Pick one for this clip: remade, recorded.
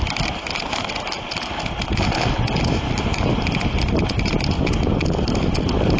recorded